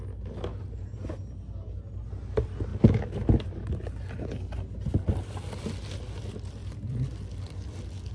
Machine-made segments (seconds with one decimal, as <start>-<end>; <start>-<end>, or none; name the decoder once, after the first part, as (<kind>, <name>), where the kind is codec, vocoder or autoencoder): 6.6-7.5 (vocoder, BigVGAN v2)